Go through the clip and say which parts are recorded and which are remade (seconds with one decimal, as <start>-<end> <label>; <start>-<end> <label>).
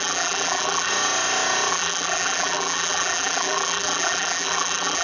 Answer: 0.0-0.9 remade; 0.9-1.7 recorded; 1.7-5.0 remade